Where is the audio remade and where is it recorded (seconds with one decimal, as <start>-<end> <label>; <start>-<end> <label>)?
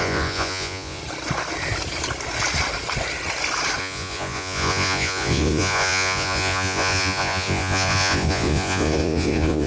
0.0-1.0 remade; 1.0-3.8 recorded; 3.8-9.7 remade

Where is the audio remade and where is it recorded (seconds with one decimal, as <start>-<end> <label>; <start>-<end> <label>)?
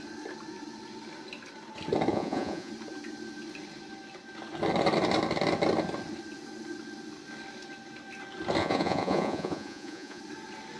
0.0-2.1 recorded; 2.1-2.7 remade; 2.7-8.6 recorded; 8.6-10.2 remade; 10.2-10.8 recorded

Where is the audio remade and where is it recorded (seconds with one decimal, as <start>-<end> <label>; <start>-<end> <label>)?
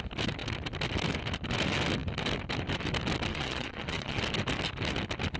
0.0-3.3 recorded; 3.3-4.2 remade; 4.2-5.4 recorded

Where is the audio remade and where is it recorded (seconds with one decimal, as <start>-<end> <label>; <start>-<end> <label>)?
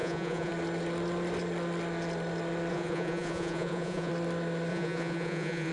0.0-0.5 remade; 0.5-2.7 recorded; 2.7-4.1 remade; 4.1-4.7 recorded; 4.7-5.7 remade